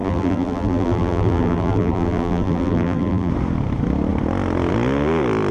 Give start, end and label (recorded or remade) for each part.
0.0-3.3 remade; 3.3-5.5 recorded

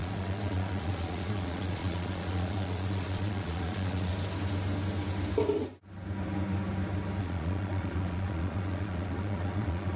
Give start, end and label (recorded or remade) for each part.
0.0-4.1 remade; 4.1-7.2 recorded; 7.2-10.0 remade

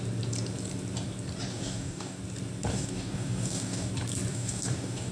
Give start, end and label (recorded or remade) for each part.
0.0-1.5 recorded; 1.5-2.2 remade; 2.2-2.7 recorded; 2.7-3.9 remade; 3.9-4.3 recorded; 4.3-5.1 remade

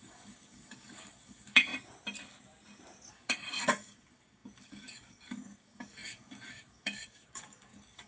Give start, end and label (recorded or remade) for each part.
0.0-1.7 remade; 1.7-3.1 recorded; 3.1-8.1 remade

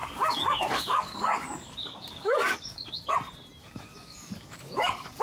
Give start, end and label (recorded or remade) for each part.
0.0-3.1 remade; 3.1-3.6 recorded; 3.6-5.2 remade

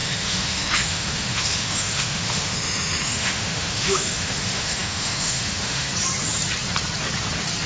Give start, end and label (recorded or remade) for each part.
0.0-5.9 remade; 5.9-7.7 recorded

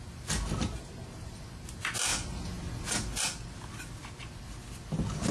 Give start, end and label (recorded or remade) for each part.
0.0-5.3 recorded

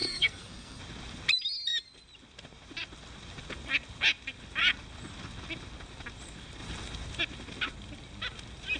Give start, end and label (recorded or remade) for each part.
0.0-0.8 remade; 0.8-8.8 recorded